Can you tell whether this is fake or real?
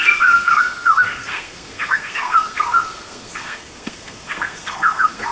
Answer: fake